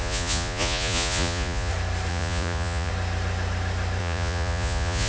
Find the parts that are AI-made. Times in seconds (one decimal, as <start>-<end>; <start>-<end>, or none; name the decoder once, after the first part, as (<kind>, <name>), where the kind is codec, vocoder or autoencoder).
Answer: 0.0-1.7 (vocoder, Vocos); 2.1-2.9; 4.0-5.1